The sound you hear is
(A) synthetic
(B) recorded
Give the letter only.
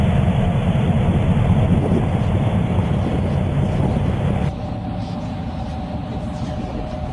B